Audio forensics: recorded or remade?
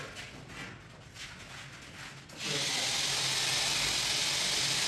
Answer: recorded